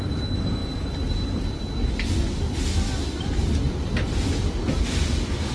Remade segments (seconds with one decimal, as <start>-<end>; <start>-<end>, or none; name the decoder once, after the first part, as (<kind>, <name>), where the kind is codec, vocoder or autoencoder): none